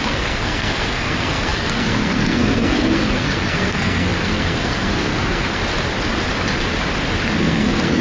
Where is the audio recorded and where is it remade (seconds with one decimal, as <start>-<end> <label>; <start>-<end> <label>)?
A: 0.0-5.6 remade; 5.6-7.4 recorded; 7.4-8.0 remade